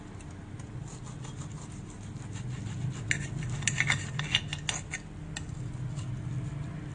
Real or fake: real